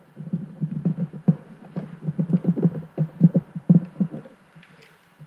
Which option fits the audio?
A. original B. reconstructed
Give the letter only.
B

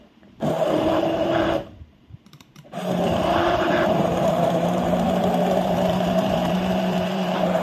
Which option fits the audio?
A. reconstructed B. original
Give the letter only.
A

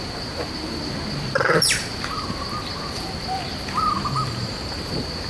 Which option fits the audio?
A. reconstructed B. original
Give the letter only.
A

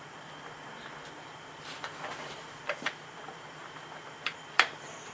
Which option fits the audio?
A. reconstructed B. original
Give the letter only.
A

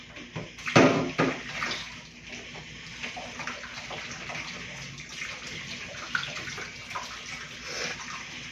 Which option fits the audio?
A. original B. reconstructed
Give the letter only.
A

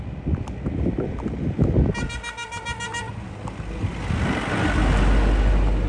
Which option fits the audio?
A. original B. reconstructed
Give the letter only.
A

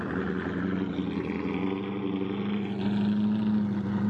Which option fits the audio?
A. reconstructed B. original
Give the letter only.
B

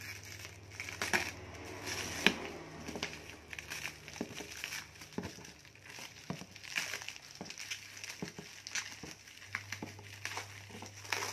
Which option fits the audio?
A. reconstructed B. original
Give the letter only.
B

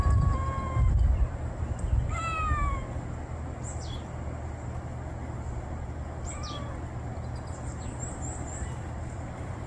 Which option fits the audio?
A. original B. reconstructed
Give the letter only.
A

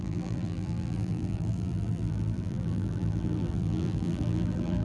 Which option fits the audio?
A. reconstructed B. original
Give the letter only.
A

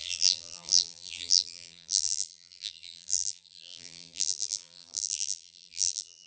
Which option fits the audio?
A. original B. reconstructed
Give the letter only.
B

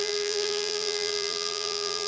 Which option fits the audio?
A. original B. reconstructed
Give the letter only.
B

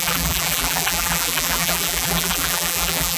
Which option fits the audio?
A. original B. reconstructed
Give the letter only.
B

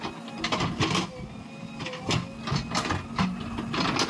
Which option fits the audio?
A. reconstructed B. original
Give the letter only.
B